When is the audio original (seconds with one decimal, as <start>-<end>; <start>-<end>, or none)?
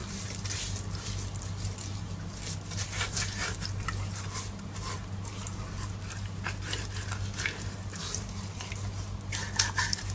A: 0.0-10.1